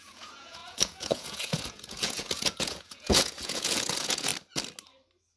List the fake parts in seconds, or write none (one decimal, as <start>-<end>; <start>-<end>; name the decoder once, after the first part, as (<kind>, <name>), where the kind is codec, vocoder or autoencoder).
0.0-4.3 (vocoder, Vocos)